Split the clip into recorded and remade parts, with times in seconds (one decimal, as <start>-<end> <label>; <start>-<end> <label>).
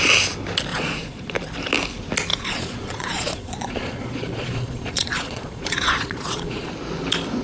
0.0-0.7 recorded; 0.7-1.3 remade; 1.3-2.3 recorded; 2.3-6.7 remade; 6.7-7.4 recorded